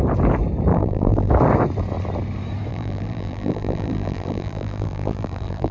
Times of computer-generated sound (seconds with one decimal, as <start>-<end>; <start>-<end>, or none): 0.7-1.3; 2.7-5.7